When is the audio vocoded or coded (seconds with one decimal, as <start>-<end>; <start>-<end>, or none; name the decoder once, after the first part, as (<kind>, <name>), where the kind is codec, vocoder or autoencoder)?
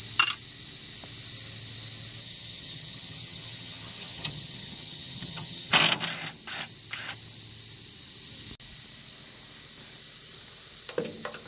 2.2-5.7 (vocoder, HiFi-GAN)